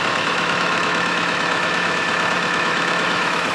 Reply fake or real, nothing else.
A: fake